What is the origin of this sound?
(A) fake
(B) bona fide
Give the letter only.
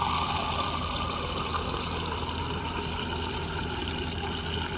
B